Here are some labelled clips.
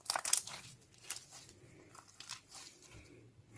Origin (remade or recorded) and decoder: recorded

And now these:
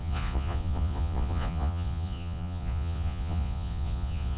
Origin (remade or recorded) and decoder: remade, vocoder, Vocos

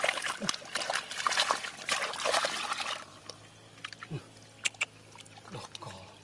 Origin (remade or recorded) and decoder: recorded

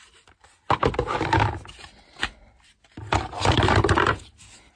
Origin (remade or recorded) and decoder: recorded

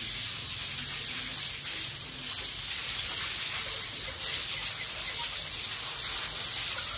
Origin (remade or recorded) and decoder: recorded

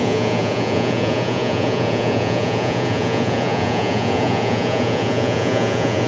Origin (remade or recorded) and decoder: remade, vocoder, Vocos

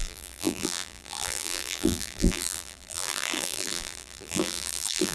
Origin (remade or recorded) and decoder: remade, vocoder, BigVGAN v2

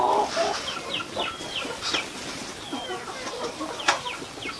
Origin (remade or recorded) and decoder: recorded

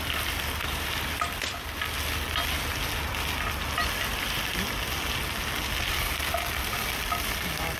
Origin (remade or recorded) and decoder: recorded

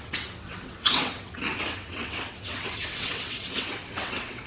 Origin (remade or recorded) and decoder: remade, vocoder, WaveNeXt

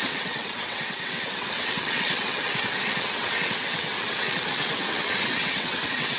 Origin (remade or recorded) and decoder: remade, vocoder, WaveNeXt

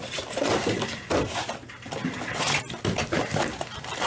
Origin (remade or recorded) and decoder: recorded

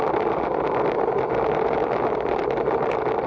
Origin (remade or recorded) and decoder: recorded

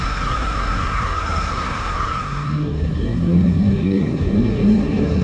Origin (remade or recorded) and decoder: remade, codec, SNAC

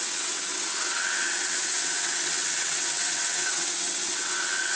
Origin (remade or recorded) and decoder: remade, vocoder, WaveNeXt